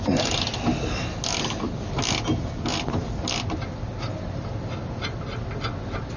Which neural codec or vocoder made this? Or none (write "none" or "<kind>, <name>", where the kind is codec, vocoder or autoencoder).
none